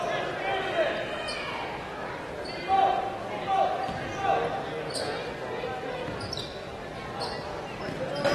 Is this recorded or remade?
recorded